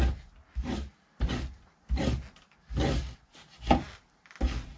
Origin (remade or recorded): recorded